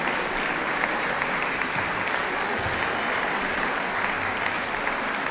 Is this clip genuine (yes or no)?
yes